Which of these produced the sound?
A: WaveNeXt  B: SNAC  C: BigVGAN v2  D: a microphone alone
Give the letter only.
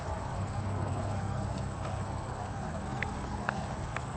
B